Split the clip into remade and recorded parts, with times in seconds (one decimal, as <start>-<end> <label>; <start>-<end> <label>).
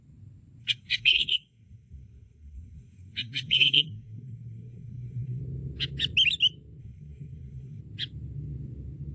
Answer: 0.0-0.6 recorded; 0.6-5.4 remade; 5.4-6.8 recorded; 6.8-7.8 remade; 7.8-9.1 recorded